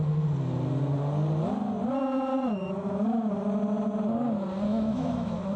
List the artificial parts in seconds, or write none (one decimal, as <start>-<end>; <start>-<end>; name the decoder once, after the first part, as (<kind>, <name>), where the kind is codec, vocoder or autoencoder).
2.3-3.3 (autoencoder, DAC-VAE); 4.7-5.6